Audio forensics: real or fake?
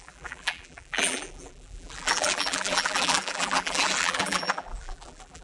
fake